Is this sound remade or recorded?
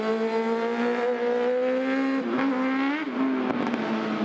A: recorded